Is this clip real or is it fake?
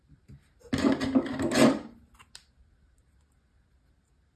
real